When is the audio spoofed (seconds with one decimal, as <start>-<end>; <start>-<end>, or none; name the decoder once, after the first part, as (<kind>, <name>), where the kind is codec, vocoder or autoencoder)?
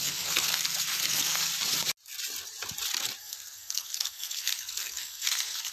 0.0-1.5 (codec, SNAC); 3.2-5.7